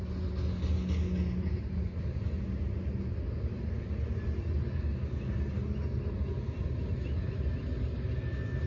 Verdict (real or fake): real